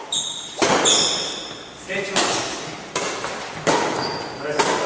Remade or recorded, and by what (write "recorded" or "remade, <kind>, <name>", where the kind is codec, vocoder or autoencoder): recorded